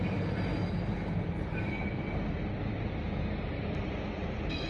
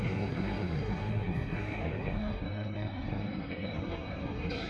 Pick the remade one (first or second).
second